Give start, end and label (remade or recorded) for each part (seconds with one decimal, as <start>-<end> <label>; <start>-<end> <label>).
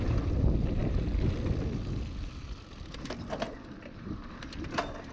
0.0-0.8 remade; 0.8-3.9 recorded; 3.9-5.1 remade